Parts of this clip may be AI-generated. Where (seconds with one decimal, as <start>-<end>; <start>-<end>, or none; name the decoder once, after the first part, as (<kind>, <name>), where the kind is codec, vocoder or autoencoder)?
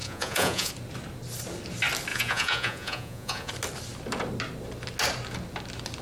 0.0-0.7 (vocoder, Vocos); 2.1-3.5